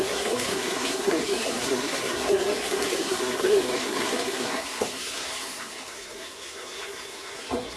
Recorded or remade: remade